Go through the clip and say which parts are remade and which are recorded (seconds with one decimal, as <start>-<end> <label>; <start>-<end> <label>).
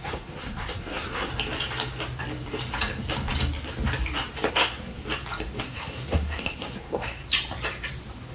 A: 0.0-1.3 remade; 1.3-4.5 recorded; 4.5-5.0 remade; 5.0-5.6 recorded; 5.6-7.2 remade; 7.2-8.3 recorded